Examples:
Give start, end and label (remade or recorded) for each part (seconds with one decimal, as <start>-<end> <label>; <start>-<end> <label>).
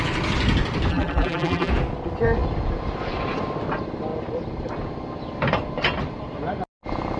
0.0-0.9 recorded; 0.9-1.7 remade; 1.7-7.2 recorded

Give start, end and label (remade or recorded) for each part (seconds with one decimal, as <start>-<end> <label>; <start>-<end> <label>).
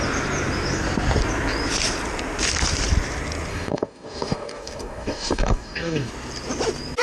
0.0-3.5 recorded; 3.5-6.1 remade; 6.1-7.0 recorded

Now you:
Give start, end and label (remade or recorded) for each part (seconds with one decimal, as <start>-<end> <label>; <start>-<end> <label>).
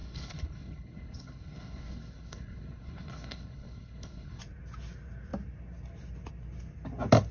0.0-4.4 remade; 4.4-7.3 recorded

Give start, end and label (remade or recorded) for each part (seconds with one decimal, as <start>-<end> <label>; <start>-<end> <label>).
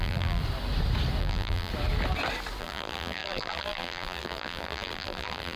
0.0-0.4 remade; 0.4-1.2 recorded; 1.2-1.7 remade; 1.7-2.6 recorded; 2.6-5.6 remade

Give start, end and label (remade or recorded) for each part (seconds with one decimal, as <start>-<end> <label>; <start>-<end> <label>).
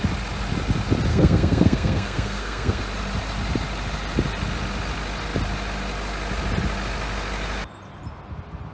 0.0-1.1 recorded; 1.1-2.8 remade; 2.8-8.7 recorded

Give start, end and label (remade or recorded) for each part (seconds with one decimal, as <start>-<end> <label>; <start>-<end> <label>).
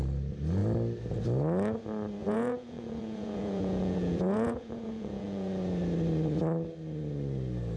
0.0-2.2 recorded; 2.2-5.5 remade; 5.5-7.8 recorded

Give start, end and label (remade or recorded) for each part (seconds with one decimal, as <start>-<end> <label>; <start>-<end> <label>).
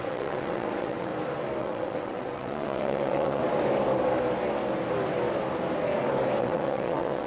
0.0-1.1 remade; 1.1-1.6 recorded; 1.6-3.4 remade; 3.4-6.4 recorded; 6.4-7.3 remade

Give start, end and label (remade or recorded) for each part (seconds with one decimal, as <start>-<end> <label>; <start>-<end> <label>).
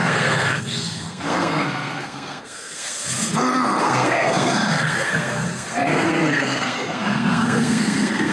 0.0-3.3 remade; 3.3-3.8 recorded; 3.8-8.3 remade